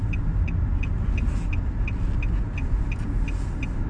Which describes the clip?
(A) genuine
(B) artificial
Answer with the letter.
A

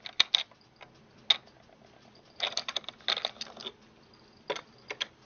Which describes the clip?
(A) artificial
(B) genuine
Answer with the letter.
B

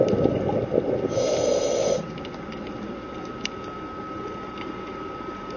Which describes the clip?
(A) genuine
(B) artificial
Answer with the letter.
A